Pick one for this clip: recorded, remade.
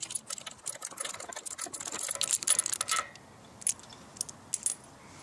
recorded